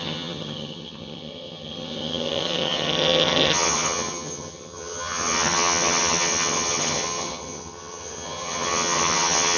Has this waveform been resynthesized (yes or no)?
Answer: yes